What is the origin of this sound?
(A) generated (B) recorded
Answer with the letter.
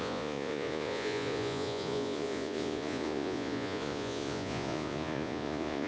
A